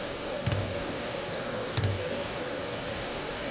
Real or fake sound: fake